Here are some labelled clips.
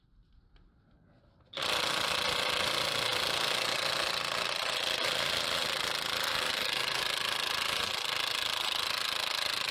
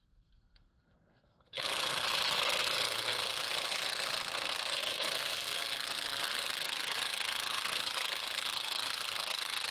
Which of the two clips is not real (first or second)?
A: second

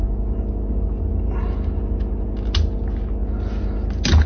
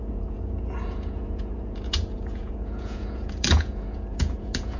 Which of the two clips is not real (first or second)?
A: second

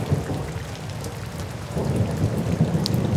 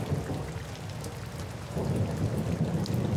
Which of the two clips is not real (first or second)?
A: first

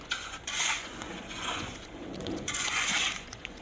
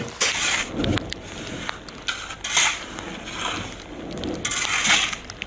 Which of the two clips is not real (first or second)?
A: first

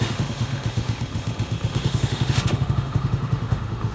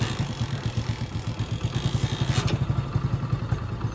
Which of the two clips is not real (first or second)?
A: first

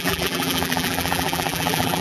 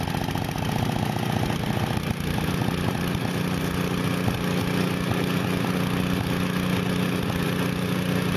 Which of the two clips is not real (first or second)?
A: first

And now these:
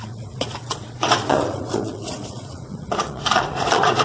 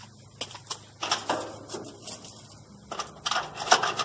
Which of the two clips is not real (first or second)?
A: first